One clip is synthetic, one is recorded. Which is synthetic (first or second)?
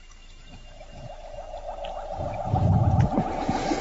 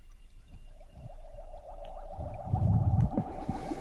second